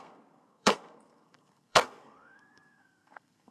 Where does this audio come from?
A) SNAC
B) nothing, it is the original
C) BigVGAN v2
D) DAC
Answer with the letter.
A